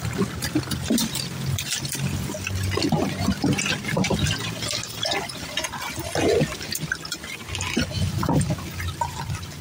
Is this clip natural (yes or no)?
yes